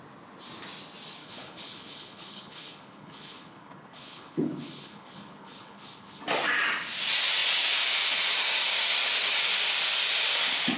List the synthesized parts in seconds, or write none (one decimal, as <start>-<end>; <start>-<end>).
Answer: 1.2-6.2